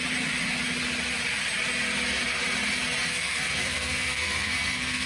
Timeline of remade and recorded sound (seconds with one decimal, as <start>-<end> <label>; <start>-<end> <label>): 0.0-3.1 recorded; 3.1-5.1 remade